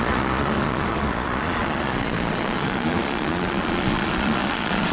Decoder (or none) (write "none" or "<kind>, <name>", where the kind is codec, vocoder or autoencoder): vocoder, Vocos